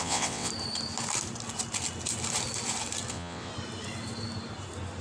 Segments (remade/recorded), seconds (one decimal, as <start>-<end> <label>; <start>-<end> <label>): 0.0-0.5 remade; 0.5-3.1 recorded; 3.1-3.5 remade; 3.5-5.0 recorded

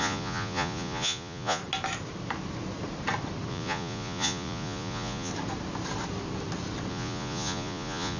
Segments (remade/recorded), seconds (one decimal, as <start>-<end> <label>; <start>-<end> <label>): 0.0-1.6 remade; 1.6-3.5 recorded; 3.5-5.3 remade; 5.3-6.9 recorded; 6.9-8.2 remade

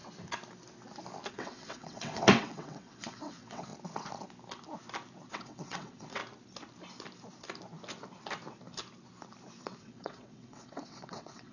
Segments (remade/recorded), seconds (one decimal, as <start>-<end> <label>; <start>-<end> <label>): 0.0-1.3 recorded; 1.3-3.7 remade; 3.7-5.3 recorded; 5.3-6.2 remade; 6.2-9.8 recorded; 9.8-11.5 remade

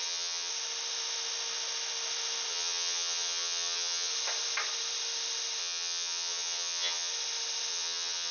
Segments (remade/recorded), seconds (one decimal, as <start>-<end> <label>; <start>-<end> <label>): 0.0-0.5 remade; 0.5-2.5 recorded; 2.5-4.1 remade; 4.1-5.6 recorded; 5.6-7.1 remade; 7.1-7.7 recorded; 7.7-8.3 remade

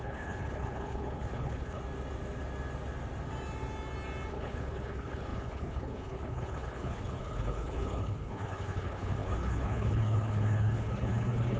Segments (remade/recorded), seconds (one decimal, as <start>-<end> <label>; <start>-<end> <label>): 0.0-1.8 remade; 1.8-4.3 recorded; 4.3-11.6 remade